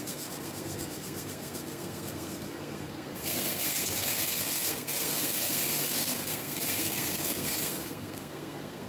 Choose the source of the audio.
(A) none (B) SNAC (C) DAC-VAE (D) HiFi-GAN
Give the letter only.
B